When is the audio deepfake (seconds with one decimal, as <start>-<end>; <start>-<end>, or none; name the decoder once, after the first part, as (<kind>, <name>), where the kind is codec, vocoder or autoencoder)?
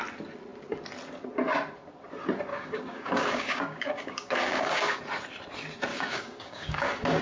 2.5-5.0 (codec, DAC); 5.9-7.2